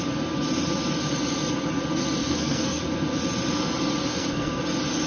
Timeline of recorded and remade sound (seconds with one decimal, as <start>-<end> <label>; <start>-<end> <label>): 0.0-2.2 recorded; 2.2-2.8 remade; 2.8-4.1 recorded; 4.1-4.6 remade; 4.6-5.1 recorded

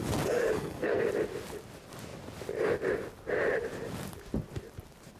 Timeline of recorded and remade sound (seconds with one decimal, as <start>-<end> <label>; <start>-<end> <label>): 0.0-0.4 recorded; 0.4-1.1 remade; 1.1-5.2 recorded

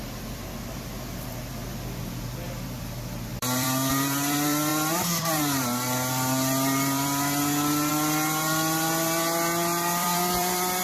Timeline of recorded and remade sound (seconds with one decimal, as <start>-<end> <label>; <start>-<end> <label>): 0.0-10.8 remade

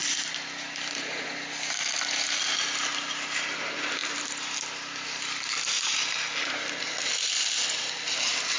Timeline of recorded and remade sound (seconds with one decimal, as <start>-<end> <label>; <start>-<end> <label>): 0.0-8.6 recorded